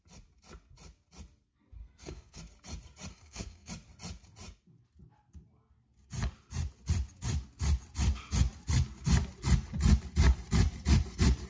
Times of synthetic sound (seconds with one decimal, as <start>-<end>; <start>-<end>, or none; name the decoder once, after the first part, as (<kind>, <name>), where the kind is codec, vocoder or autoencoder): 1.8-2.4 (codec, SNAC); 3.1-3.7